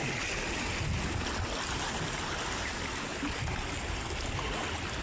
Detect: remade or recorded recorded